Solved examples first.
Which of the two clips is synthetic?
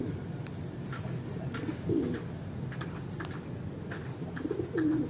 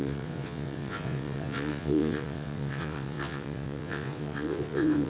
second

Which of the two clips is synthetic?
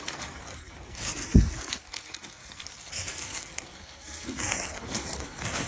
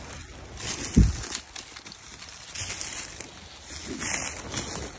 first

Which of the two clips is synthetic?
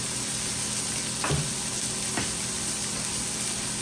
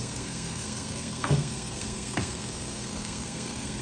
second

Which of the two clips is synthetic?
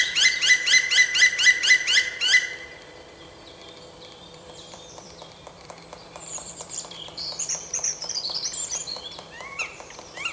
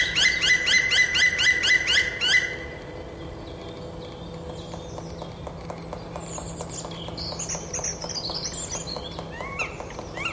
first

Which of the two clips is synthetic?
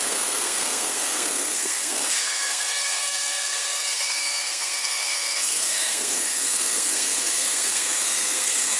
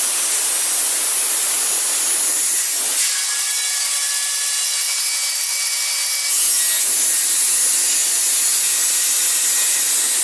first